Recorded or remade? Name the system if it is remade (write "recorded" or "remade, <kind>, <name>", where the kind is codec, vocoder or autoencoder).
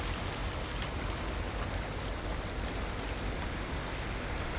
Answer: recorded